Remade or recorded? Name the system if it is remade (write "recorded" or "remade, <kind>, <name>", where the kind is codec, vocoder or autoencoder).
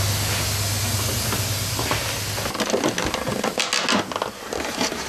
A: recorded